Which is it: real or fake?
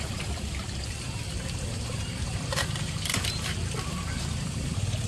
fake